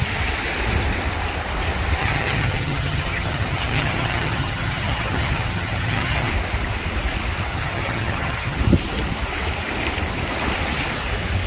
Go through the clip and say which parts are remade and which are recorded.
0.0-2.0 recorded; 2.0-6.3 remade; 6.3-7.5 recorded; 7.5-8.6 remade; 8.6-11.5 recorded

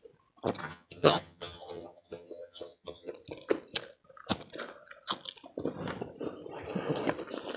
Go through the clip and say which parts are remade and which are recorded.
0.0-0.6 recorded; 0.6-3.1 remade; 3.1-7.6 recorded

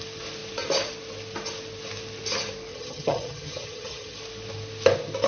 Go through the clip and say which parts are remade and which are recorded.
0.0-2.7 recorded; 2.7-4.2 remade; 4.2-5.3 recorded

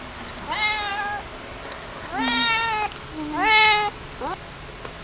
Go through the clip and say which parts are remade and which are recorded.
0.0-5.0 recorded